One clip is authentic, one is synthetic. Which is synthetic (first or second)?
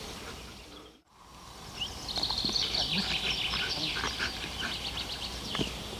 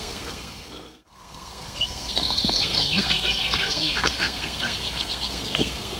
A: second